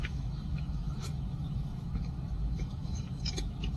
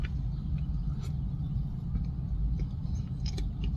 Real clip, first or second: second